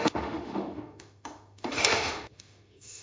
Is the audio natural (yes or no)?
no